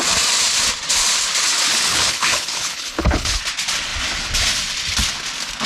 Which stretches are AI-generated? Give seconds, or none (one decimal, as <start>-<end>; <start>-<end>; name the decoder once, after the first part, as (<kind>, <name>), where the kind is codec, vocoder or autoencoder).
1.9-3.4 (codec, HILCodec)